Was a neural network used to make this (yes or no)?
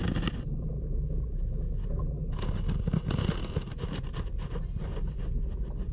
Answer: no